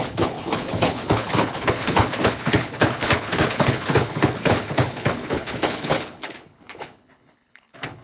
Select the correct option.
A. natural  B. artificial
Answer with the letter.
B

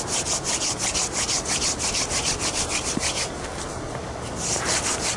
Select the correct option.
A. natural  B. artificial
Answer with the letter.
A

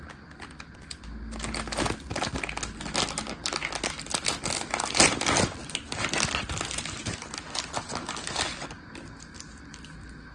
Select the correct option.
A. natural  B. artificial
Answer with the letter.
A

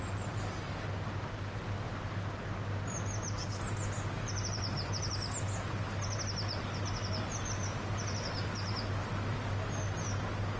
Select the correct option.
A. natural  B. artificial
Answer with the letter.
A